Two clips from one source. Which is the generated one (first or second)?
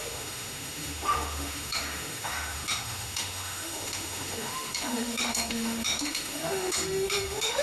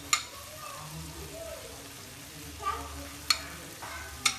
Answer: first